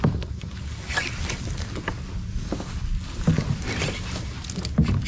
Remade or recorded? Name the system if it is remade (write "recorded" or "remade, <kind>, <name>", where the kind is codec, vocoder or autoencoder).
recorded